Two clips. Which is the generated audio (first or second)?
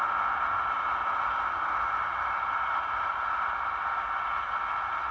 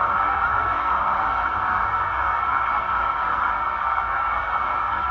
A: second